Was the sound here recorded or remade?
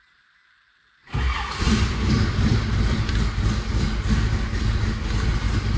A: recorded